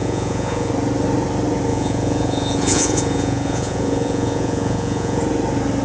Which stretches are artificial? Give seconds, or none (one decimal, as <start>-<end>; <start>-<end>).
0.0-0.7; 1.7-5.2